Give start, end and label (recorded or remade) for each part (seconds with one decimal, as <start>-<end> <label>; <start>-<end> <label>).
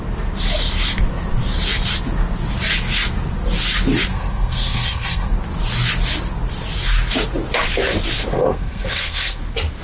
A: 0.0-4.1 recorded; 4.1-5.3 remade; 5.3-8.3 recorded; 8.3-9.4 remade; 9.4-9.8 recorded